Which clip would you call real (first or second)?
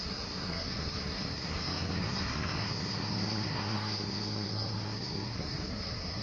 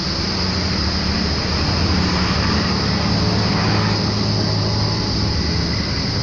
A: second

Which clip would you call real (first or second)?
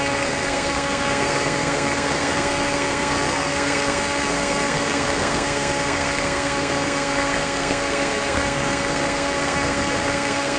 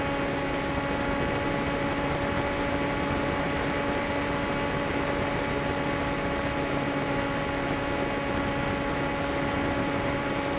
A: second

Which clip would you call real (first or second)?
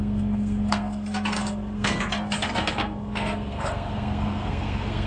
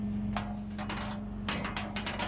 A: second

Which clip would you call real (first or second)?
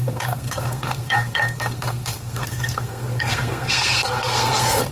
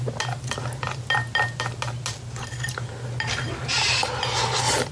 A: second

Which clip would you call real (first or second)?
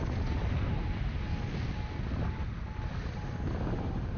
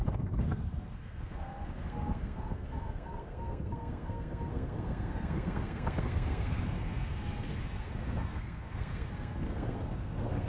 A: first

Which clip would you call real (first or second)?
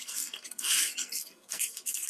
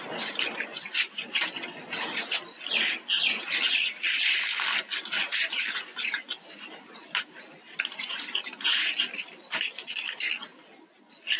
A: second